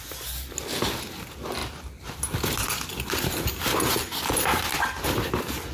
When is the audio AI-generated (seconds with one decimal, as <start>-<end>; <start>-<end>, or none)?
none